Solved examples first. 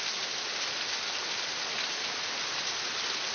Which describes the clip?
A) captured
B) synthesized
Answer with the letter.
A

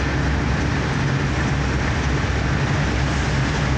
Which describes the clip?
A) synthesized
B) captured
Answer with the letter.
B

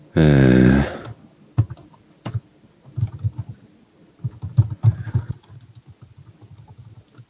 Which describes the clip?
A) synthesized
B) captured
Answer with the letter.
B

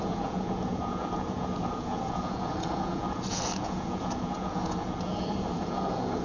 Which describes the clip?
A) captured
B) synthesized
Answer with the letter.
B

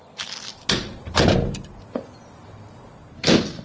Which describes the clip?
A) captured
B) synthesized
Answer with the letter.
A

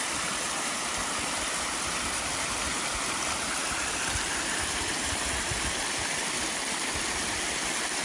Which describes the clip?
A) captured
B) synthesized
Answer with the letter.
B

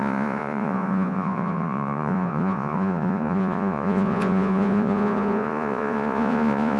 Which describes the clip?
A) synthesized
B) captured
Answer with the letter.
A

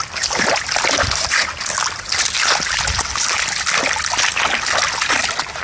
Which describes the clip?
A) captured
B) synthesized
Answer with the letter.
A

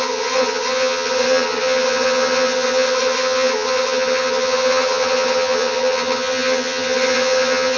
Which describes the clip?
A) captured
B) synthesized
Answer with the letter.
B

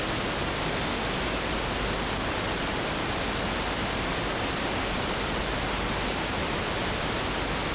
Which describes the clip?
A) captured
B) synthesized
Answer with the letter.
A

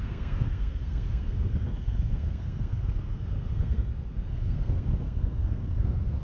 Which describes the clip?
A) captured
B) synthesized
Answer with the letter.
B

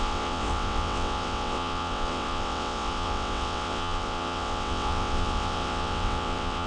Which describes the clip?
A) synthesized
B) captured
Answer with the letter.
A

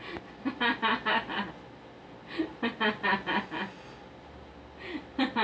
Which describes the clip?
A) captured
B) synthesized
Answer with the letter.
A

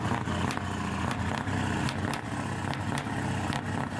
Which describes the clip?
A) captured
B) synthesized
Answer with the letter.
A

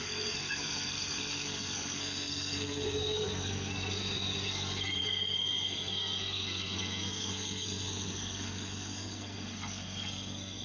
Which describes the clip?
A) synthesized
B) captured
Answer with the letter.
A